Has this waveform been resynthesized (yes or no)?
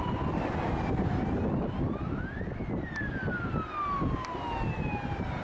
no